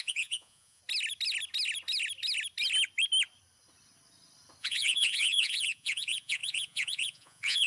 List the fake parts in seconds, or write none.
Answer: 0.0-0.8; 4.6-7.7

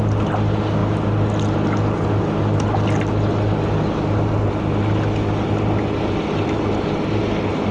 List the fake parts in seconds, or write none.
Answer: none

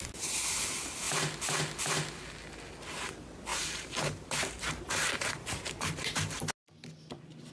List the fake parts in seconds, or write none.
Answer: 3.5-6.5

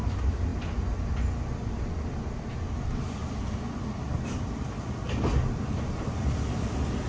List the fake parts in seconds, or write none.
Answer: none

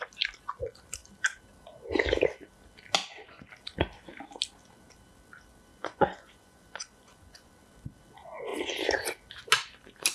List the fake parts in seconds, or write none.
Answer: 3.0-3.5; 5.7-7.5

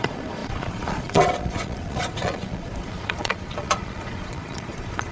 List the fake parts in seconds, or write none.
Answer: 0.0-5.1